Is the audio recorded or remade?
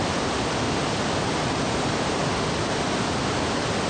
recorded